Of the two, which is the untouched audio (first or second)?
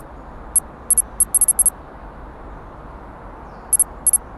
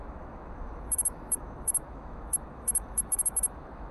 first